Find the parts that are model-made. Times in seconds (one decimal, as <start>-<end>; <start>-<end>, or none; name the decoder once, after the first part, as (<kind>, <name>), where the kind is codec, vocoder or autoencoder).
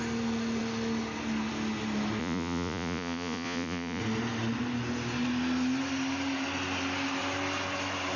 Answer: 2.2-4.0 (vocoder, Vocos)